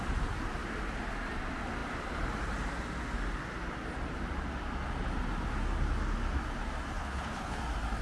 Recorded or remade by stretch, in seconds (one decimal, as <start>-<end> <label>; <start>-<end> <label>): 0.0-7.0 recorded; 7.0-7.6 remade; 7.6-8.0 recorded